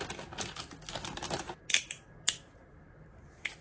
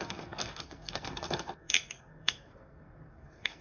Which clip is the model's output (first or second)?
second